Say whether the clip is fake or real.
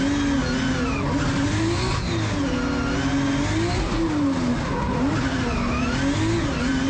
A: real